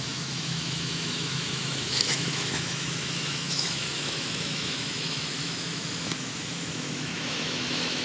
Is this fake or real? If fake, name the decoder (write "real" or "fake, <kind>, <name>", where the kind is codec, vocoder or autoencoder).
fake, autoencoder, DAC-VAE